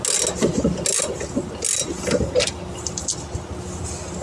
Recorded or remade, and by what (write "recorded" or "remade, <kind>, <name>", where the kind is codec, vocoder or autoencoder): recorded